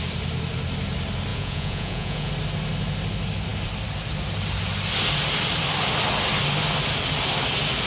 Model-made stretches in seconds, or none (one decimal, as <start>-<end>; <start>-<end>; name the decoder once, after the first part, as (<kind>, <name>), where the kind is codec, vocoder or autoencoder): 1.3-2.3 (vocoder, Vocos)